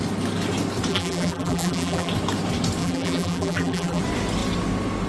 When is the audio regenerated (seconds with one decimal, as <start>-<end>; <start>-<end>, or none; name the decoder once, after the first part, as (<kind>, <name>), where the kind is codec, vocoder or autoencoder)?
0.9-2.1 (vocoder, BigVGAN v2); 2.8-4.0